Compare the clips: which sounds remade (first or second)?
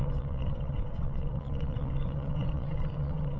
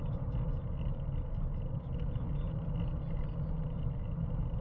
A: first